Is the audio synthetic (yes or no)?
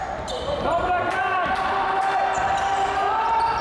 no